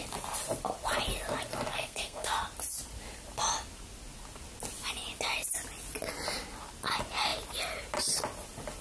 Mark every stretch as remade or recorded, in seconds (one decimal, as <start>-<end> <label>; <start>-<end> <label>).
0.0-1.7 recorded; 1.7-2.3 remade; 2.3-8.8 recorded